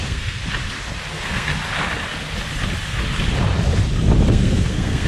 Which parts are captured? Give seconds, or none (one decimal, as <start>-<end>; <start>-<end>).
0.4-1.1; 1.5-4.3